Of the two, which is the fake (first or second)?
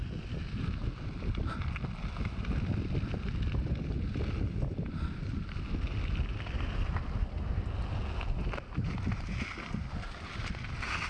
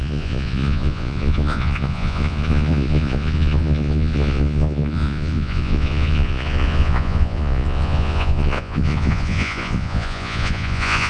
second